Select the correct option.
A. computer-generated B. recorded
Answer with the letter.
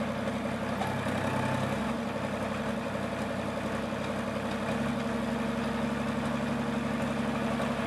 B